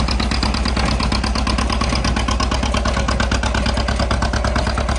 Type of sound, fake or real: real